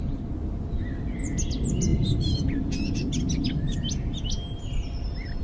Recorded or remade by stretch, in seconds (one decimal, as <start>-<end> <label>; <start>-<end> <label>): 0.0-5.4 recorded